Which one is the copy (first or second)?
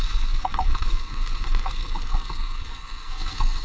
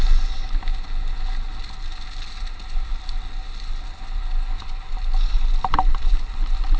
first